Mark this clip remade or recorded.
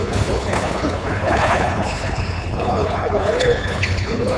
remade